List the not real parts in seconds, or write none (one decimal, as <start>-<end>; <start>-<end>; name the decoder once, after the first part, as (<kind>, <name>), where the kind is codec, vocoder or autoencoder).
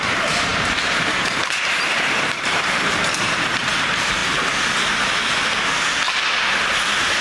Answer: 0.0-4.2 (vocoder, BigVGAN v2)